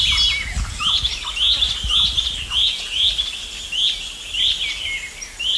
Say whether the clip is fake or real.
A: real